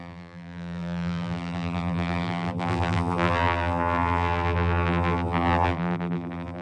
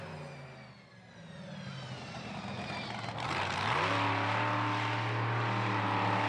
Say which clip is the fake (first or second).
first